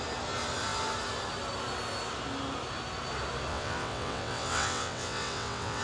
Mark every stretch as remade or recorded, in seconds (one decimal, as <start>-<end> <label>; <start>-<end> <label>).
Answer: 0.0-3.5 recorded; 3.5-5.8 remade